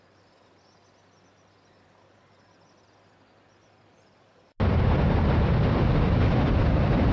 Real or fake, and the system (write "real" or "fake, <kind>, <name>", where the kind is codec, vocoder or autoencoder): real